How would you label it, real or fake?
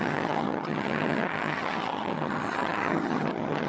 fake